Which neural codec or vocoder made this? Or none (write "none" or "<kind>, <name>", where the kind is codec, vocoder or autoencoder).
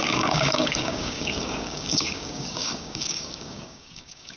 codec, DAC